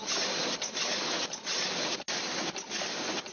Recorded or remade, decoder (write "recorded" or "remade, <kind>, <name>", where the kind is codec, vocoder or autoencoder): recorded